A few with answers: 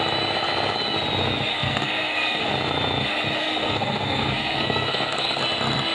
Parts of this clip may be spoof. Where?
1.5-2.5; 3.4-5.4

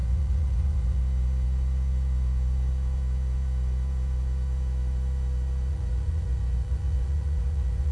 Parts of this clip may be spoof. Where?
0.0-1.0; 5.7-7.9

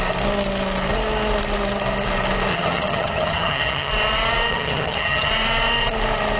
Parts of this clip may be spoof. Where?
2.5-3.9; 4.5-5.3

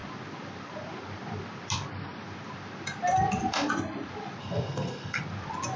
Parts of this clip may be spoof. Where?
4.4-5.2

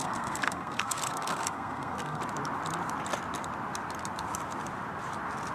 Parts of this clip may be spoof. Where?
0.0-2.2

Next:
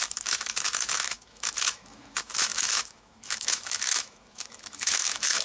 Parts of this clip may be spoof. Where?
0.0-5.4

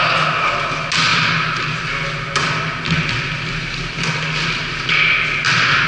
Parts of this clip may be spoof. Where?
none

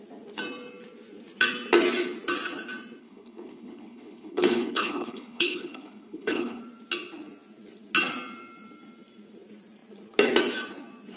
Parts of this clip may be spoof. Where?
3.0-6.6